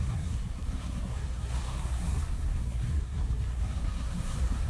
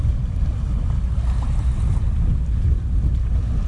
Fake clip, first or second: first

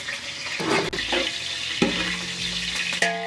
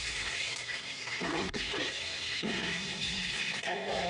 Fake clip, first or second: second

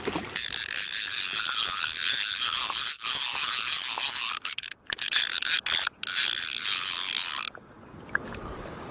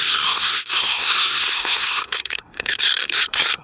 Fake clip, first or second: second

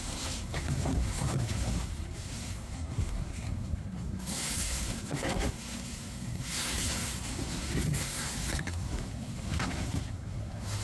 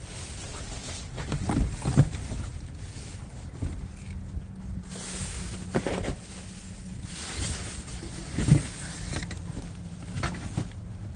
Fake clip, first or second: first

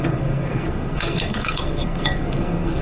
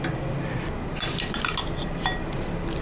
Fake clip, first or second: first